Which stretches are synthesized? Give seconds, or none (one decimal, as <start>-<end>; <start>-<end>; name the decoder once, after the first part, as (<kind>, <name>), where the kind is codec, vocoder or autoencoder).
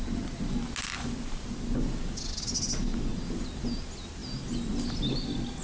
none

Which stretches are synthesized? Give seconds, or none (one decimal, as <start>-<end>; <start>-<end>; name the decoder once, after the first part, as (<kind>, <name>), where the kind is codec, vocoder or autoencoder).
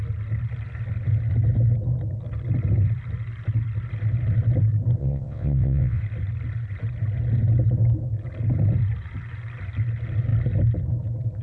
5.0-6.0 (vocoder, WaveNeXt)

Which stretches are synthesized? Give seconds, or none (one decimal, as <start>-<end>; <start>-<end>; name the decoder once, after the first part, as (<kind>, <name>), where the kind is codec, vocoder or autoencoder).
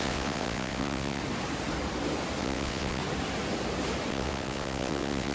0.0-1.2 (vocoder, WaveNeXt); 2.4-3.0; 4.1-5.3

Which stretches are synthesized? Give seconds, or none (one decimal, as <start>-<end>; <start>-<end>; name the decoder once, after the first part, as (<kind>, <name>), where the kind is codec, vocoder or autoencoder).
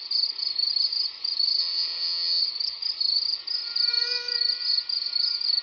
1.6-2.4 (vocoder, WaveNeXt)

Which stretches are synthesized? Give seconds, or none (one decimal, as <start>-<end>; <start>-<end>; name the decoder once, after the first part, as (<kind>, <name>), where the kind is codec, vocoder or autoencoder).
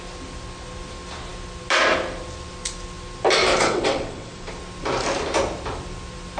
3.5-4.5 (vocoder, WaveNeXt)